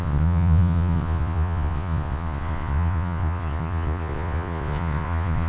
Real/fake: fake